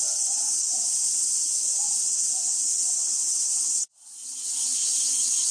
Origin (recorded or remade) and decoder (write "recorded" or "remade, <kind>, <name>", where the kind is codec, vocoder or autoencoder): remade, vocoder, WaveNeXt